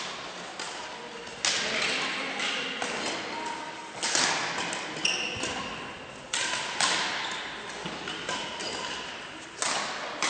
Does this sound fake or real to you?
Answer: real